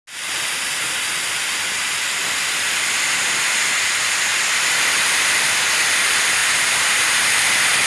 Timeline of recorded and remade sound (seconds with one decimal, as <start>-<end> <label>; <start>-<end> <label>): 0.0-6.4 recorded; 6.4-7.2 remade; 7.2-7.9 recorded